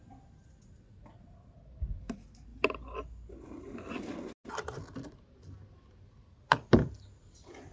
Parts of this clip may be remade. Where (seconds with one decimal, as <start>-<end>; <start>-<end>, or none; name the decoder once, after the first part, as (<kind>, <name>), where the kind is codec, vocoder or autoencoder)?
none